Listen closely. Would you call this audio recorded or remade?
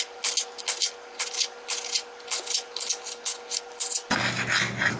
recorded